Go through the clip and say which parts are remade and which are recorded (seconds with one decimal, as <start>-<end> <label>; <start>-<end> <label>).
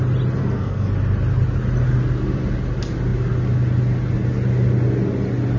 0.0-0.4 recorded; 0.4-0.9 remade; 0.9-5.6 recorded